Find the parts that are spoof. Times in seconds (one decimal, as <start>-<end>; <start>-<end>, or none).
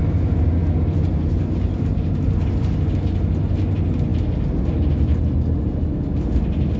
none